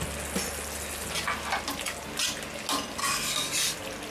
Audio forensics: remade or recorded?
recorded